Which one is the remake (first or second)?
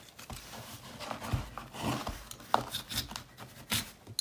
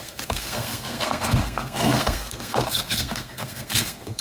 second